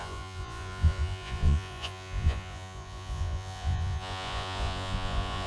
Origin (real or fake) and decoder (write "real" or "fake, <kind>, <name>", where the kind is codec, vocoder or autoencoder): fake, vocoder, Vocos